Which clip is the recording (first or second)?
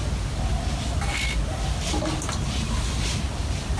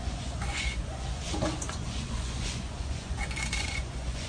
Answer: first